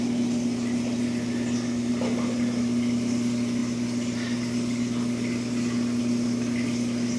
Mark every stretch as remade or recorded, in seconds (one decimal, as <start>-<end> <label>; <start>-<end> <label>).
0.0-7.2 recorded